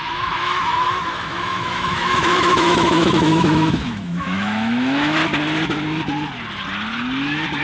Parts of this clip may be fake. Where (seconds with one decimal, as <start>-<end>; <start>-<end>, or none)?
0.0-5.2